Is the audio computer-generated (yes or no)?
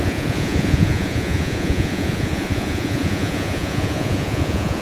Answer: yes